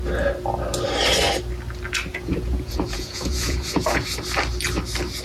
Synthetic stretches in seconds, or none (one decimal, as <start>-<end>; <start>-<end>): 2.1-4.0